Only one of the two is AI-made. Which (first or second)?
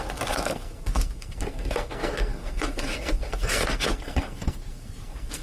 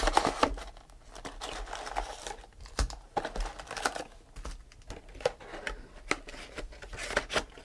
first